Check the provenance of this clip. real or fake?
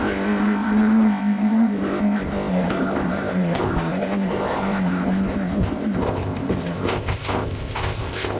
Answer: fake